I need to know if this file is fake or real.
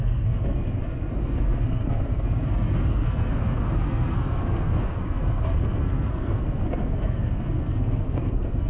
fake